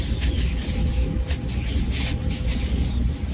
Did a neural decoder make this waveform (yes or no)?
no